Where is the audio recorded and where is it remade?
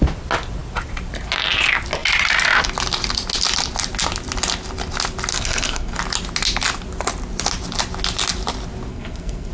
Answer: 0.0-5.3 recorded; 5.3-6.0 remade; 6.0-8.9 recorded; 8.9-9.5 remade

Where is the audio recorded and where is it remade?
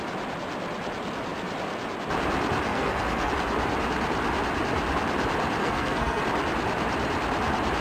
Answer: 0.0-2.7 recorded; 2.7-3.3 remade; 3.3-5.6 recorded; 5.6-6.2 remade; 6.2-7.8 recorded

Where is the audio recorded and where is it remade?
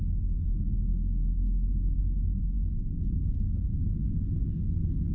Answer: 0.0-0.9 recorded; 0.9-2.0 remade; 2.0-2.4 recorded; 2.4-3.8 remade; 3.8-5.1 recorded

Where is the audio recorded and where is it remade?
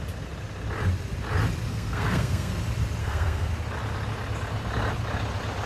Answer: 0.0-1.7 recorded; 1.7-2.5 remade; 2.5-3.0 recorded; 3.0-3.5 remade; 3.5-5.7 recorded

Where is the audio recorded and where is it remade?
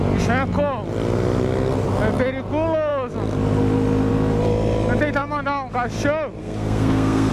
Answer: 0.0-6.4 recorded; 6.4-7.3 remade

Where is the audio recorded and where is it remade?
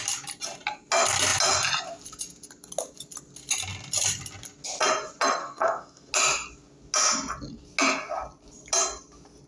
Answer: 0.0-5.4 recorded; 5.4-6.1 remade; 6.1-9.5 recorded